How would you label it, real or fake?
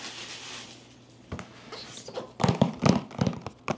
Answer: real